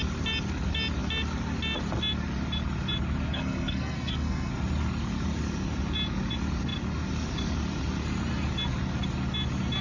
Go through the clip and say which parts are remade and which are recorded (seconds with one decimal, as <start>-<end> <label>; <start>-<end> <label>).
0.0-3.3 recorded; 3.3-4.5 remade; 4.5-9.8 recorded